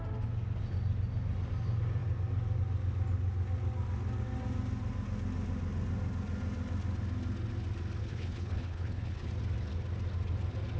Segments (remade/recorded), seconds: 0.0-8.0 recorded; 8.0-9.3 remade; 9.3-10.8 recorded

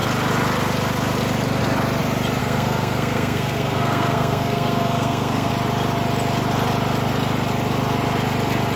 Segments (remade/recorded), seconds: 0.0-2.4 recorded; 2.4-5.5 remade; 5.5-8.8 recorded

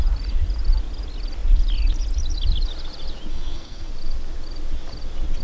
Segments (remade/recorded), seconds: 0.0-3.3 recorded; 3.3-3.9 remade; 3.9-5.4 recorded